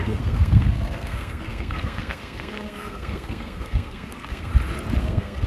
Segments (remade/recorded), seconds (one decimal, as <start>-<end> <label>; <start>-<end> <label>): 0.0-4.5 remade; 4.5-5.0 recorded; 5.0-5.5 remade